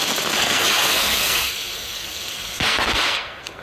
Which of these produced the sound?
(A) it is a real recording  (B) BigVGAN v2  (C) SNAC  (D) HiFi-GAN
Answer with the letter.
C